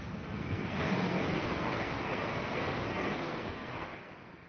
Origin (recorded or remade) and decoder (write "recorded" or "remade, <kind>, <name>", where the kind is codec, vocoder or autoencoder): remade, codec, SNAC